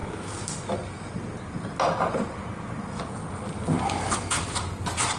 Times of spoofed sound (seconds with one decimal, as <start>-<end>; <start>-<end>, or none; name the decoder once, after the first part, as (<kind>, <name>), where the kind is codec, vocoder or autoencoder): none